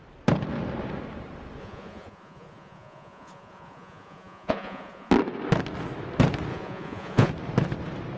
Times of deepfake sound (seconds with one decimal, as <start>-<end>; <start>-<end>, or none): 1.6-5.1; 6.5-7.3